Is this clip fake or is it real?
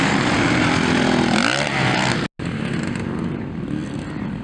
real